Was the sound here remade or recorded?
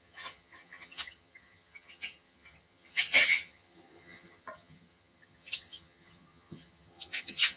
remade